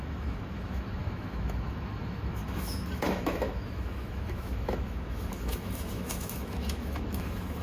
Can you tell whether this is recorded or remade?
remade